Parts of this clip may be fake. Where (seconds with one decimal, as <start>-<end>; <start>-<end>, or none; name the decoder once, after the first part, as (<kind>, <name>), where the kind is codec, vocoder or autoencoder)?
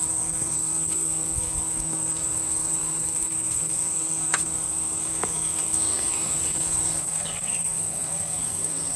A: 0.0-9.0 (codec, SNAC)